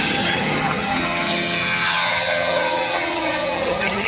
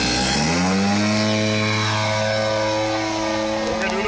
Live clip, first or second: second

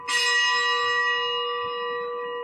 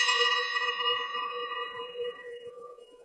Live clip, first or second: first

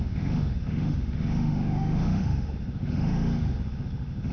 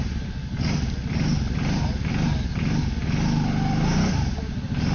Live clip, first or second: second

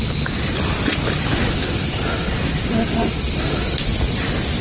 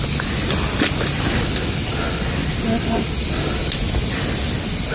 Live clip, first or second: second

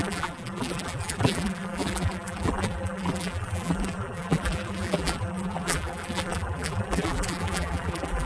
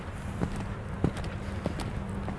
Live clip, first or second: second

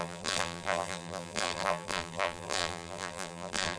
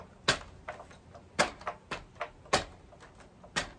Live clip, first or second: second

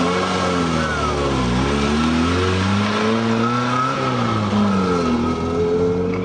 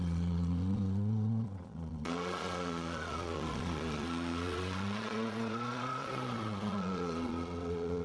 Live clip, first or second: first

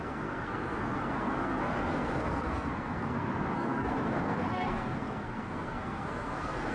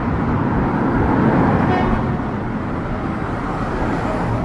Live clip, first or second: second